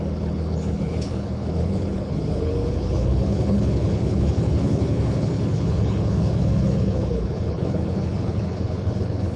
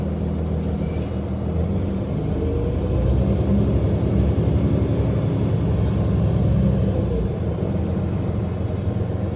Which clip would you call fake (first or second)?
first